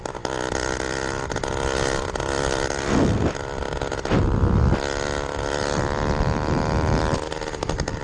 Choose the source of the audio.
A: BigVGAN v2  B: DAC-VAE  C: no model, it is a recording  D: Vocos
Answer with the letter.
C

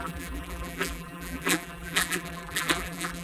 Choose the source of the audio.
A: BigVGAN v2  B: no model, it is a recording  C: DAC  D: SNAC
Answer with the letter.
A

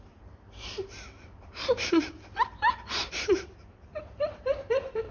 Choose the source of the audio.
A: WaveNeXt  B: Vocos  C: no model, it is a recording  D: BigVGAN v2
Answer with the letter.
D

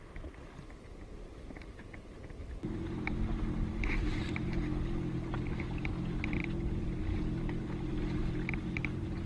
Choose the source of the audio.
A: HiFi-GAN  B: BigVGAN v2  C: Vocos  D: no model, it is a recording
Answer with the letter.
D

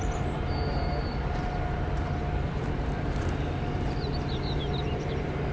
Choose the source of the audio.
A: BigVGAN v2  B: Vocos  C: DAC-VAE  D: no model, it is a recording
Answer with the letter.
A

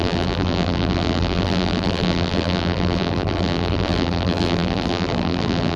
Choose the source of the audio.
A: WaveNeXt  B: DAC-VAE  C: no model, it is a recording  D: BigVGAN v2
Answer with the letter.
D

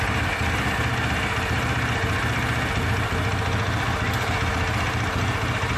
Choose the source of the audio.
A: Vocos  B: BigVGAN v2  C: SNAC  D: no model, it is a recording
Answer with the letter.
D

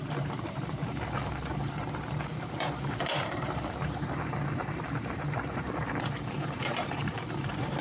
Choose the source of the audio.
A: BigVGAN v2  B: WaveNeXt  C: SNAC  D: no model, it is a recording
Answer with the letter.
A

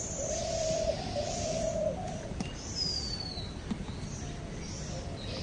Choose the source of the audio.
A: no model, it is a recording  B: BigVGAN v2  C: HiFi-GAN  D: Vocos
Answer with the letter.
B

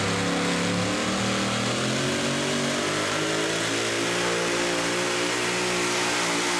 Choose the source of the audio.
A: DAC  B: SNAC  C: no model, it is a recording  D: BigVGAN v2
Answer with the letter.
C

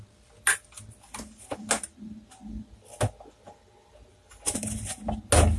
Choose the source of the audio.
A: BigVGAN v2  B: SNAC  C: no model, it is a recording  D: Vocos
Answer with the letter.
C